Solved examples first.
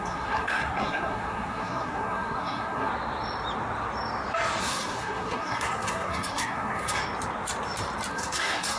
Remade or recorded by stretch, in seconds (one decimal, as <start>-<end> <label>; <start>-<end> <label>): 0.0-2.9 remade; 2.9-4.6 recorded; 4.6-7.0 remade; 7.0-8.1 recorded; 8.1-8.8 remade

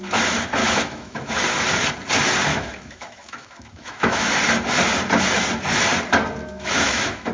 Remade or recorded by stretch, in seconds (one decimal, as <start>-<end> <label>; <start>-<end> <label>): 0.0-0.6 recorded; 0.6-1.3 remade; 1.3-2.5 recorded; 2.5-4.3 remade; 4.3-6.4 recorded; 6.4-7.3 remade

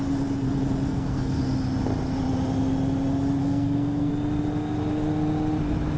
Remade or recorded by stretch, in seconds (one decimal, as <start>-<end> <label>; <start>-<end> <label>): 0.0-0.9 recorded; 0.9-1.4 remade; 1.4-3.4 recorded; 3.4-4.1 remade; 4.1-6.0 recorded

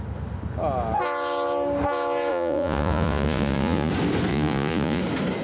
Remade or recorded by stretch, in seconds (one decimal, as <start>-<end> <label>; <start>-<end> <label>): 0.0-2.3 recorded; 2.3-3.9 remade; 3.9-4.3 recorded; 4.3-5.0 remade; 5.0-5.4 recorded